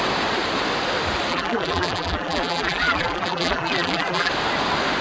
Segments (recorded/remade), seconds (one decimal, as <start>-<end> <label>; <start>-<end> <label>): 0.0-1.3 recorded; 1.3-4.3 remade; 4.3-5.0 recorded